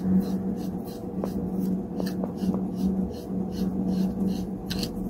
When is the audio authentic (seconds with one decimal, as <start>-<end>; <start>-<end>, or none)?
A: 0.0-5.1